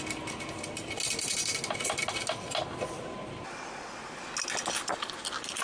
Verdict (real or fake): real